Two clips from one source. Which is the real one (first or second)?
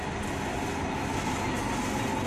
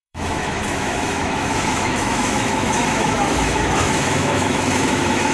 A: first